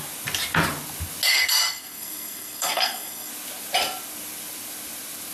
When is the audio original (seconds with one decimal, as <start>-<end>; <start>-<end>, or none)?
0.0-1.3; 3.3-5.3